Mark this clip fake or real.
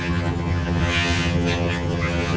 fake